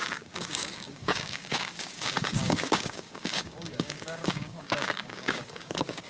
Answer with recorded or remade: remade